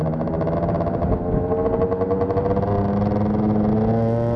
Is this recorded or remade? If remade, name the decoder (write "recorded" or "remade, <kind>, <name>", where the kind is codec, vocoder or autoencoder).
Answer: recorded